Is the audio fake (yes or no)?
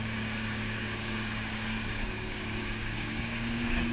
yes